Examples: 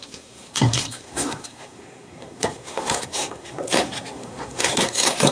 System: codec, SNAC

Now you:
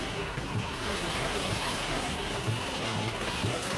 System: codec, SNAC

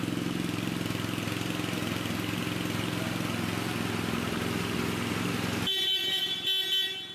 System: none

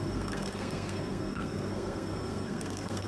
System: codec, SNAC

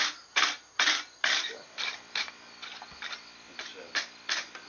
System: none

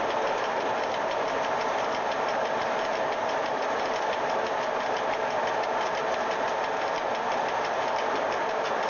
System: none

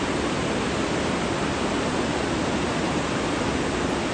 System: none